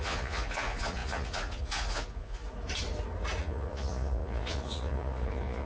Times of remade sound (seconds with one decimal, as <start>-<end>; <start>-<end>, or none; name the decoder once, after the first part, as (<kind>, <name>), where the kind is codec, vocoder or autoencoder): 0.0-2.4 (vocoder, Vocos); 3.4-5.7